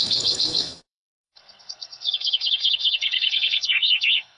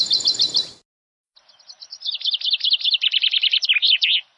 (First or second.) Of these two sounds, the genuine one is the second